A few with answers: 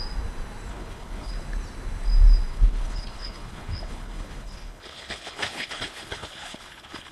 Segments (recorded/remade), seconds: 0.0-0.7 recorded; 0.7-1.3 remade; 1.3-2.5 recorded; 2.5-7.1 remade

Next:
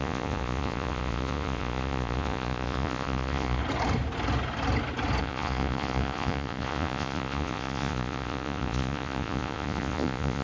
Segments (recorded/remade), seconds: 0.0-3.6 remade; 3.6-5.2 recorded; 5.2-10.4 remade

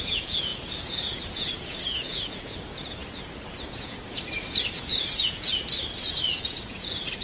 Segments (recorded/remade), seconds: 0.0-3.0 remade; 3.0-3.7 recorded; 3.7-5.5 remade; 5.5-6.1 recorded; 6.1-7.2 remade

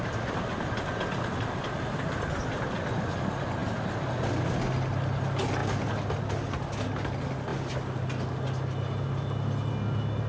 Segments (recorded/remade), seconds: 0.0-10.3 recorded

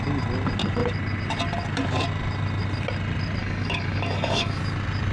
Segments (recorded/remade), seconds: 0.0-3.4 recorded; 3.4-4.6 remade; 4.6-5.1 recorded

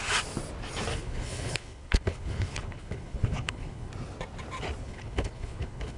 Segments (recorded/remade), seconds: 0.0-0.9 recorded; 0.9-3.9 remade; 3.9-4.8 recorded; 4.8-6.0 remade